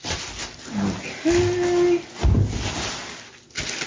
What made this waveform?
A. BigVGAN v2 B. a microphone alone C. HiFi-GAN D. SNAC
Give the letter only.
B